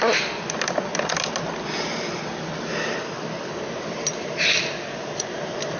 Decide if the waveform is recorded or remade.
recorded